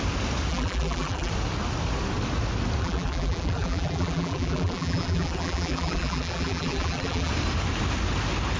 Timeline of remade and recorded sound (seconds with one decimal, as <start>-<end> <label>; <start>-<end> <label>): 0.0-0.5 recorded; 0.5-1.3 remade; 1.3-2.8 recorded; 2.8-7.3 remade; 7.3-8.6 recorded